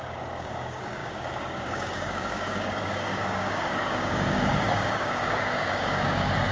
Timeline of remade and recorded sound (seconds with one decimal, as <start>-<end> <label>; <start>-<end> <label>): 0.0-6.5 remade